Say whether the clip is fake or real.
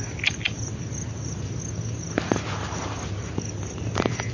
real